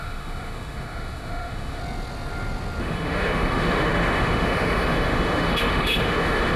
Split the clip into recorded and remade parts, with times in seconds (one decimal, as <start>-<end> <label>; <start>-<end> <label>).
0.0-1.8 remade; 1.8-2.8 recorded; 2.8-6.6 remade